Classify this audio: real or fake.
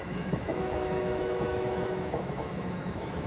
fake